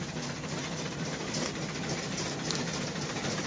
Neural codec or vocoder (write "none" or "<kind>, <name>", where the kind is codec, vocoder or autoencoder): none